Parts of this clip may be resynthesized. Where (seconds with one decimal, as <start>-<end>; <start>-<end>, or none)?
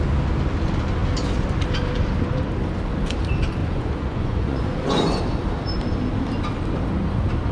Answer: 3.6-5.2